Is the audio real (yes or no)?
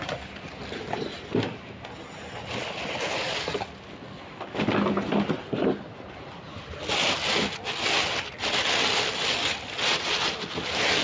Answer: yes